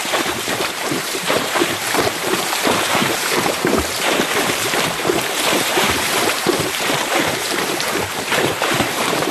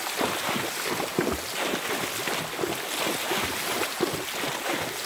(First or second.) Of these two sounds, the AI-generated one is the first